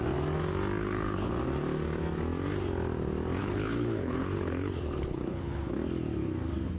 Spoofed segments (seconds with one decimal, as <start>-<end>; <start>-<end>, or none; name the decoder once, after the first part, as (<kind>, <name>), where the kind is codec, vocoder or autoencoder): 0.8-1.3 (codec, HILCodec); 3.4-5.7